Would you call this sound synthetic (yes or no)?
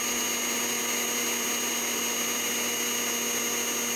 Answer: no